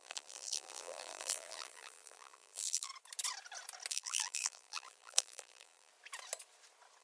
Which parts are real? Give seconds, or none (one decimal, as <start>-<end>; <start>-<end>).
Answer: 2.9-3.9; 5.9-7.0